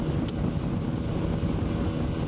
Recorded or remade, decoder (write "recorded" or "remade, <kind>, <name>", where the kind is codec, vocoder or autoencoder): recorded